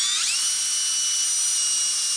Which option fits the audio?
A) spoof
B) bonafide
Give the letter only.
B